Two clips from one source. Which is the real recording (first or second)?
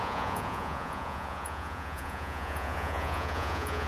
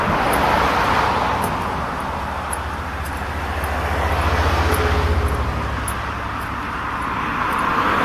second